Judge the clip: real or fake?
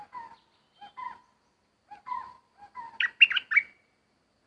real